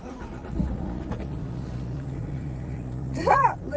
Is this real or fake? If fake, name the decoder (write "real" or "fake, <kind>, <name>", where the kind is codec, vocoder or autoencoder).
fake, vocoder, Vocos